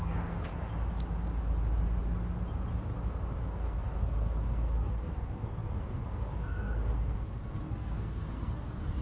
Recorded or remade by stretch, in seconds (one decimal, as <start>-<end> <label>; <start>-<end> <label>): 0.0-0.5 remade; 0.5-3.4 recorded; 3.4-9.0 remade

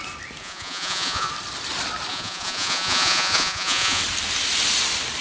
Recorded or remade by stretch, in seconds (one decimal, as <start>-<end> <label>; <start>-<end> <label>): 0.0-0.4 recorded; 0.4-1.3 remade; 1.3-2.1 recorded; 2.1-4.0 remade; 4.0-5.2 recorded

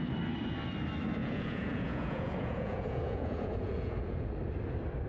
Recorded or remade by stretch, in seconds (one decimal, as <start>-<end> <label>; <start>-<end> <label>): 0.0-1.2 recorded; 1.2-4.3 remade; 4.3-5.1 recorded

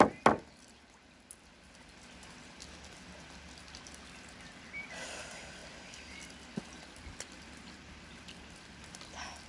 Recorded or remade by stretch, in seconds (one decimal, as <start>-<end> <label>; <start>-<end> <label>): 0.0-9.5 recorded

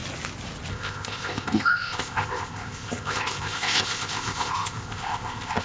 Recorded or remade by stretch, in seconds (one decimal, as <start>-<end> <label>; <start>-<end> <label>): 0.0-0.7 recorded; 0.7-5.6 remade

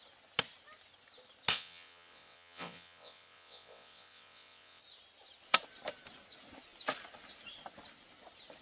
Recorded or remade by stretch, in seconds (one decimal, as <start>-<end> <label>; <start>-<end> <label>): 0.0-1.5 recorded; 1.5-4.8 remade; 4.8-8.6 recorded

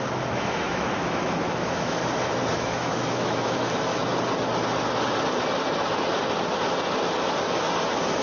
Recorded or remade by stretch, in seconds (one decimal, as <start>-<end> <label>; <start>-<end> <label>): 0.0-2.0 remade; 2.0-2.5 recorded; 2.5-4.0 remade; 4.0-8.2 recorded

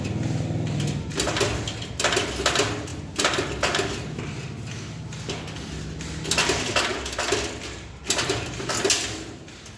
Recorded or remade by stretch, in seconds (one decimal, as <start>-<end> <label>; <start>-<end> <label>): 0.0-6.9 recorded; 6.9-9.1 remade; 9.1-9.8 recorded